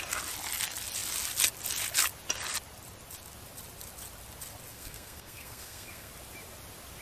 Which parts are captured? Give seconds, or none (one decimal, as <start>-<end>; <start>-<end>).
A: 0.0-4.7; 6.1-7.0

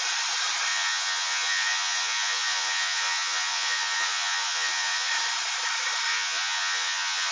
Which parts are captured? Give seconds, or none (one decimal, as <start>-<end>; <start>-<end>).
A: 0.0-0.7; 5.1-6.1

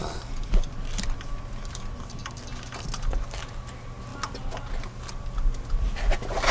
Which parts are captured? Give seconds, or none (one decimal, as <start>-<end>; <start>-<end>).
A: 0.0-6.5

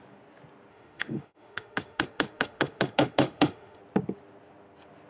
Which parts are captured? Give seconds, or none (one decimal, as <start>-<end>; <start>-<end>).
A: 0.0-0.7; 3.8-5.1

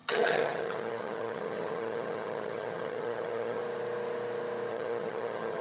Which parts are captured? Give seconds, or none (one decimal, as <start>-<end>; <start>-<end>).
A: 3.6-4.7

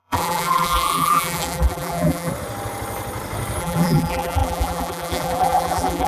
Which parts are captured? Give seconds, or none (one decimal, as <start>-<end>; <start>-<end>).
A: 2.3-3.6

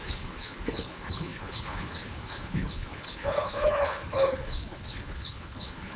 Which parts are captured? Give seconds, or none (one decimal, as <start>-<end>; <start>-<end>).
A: none

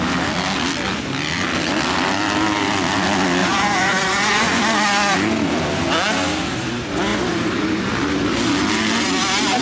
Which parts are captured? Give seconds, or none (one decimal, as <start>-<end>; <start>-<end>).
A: 0.0-3.4; 4.6-9.6